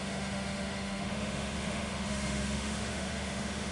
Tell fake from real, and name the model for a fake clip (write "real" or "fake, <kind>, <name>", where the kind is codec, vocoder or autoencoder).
fake, autoencoder, DAC-VAE